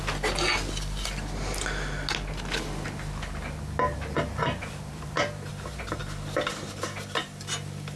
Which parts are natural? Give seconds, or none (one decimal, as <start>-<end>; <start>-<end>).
0.0-4.4; 5.5-8.0